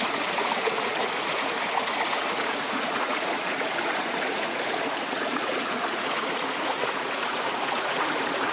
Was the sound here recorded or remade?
remade